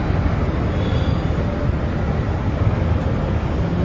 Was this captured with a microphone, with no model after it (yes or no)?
yes